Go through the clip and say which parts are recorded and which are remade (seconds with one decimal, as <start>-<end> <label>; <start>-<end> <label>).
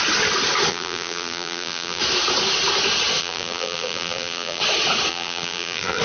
0.0-0.7 recorded; 0.7-2.0 remade; 2.0-3.2 recorded; 3.2-4.6 remade; 4.6-5.1 recorded; 5.1-6.0 remade